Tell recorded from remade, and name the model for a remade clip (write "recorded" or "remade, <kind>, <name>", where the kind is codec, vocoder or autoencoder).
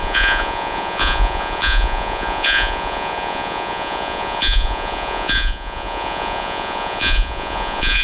remade, vocoder, Vocos